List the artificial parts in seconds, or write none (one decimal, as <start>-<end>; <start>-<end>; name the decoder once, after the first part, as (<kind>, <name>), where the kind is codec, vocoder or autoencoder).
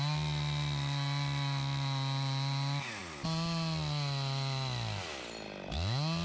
none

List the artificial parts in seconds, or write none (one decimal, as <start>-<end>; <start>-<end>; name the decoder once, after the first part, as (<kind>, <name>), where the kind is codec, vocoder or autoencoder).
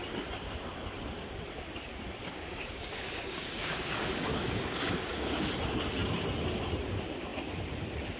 2.2-5.5 (codec, DAC)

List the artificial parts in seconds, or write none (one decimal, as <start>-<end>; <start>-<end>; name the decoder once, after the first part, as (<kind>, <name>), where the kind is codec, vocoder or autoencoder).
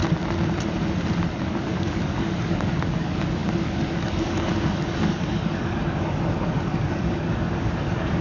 1.5-8.2 (codec, DAC)